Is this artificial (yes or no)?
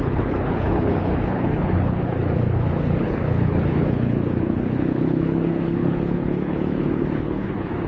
yes